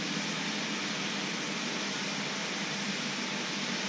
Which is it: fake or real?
real